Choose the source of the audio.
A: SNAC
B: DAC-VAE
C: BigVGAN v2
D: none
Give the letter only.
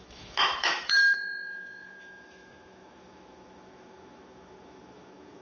B